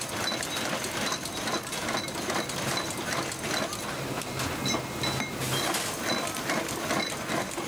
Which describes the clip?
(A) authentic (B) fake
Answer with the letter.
A